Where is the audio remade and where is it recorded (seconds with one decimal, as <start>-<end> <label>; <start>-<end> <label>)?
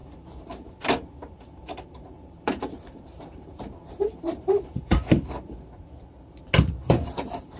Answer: 0.0-4.9 remade; 4.9-6.8 recorded; 6.8-7.6 remade